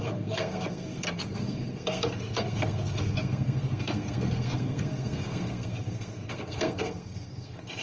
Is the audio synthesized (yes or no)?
yes